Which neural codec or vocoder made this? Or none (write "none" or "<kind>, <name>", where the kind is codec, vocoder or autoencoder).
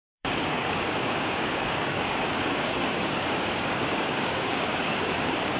codec, DAC